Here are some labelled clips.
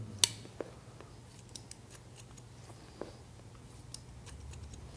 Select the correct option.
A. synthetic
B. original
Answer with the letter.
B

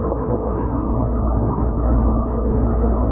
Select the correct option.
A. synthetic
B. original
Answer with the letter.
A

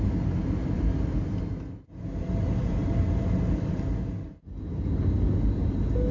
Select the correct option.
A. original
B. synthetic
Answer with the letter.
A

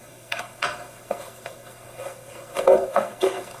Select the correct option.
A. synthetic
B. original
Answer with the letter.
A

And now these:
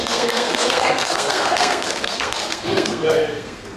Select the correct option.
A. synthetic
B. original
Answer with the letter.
A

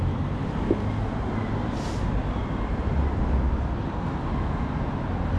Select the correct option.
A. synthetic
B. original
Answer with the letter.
B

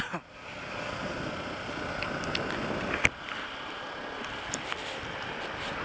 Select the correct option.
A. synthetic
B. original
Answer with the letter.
B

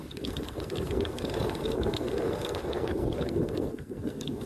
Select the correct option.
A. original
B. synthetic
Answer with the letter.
B